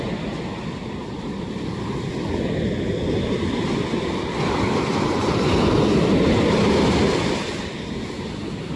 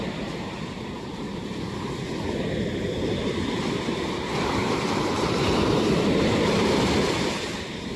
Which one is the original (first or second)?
first